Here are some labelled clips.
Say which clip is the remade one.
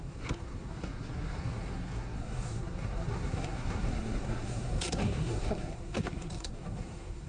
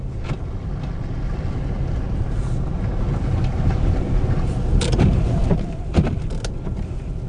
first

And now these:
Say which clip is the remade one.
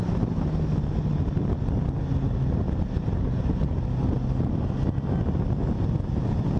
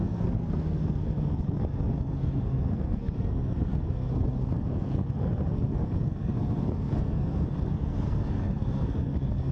second